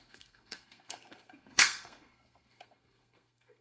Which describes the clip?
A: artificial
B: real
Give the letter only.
A